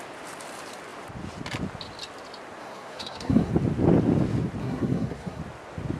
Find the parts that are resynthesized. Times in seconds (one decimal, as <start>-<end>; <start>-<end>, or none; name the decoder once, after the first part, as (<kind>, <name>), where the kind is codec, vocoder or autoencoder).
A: 2.6-3.5 (codec, SNAC); 4.6-5.4